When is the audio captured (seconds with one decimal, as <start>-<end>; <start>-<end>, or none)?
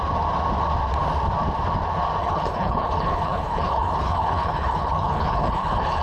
0.0-2.2